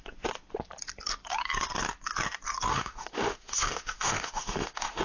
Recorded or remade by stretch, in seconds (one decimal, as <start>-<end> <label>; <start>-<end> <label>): 0.0-2.7 recorded; 2.7-5.0 remade